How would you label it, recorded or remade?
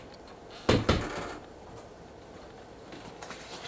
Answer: recorded